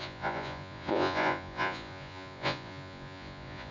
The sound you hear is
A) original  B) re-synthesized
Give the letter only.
B